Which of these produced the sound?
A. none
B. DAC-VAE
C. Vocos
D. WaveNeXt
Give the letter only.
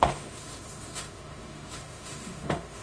B